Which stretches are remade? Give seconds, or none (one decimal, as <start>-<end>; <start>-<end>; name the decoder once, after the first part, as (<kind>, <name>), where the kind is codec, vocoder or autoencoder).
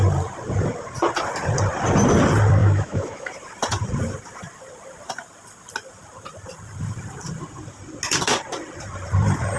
2.6-3.3 (autoencoder, DAC-VAE)